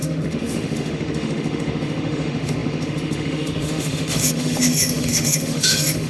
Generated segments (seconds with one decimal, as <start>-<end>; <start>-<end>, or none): 0.0-6.1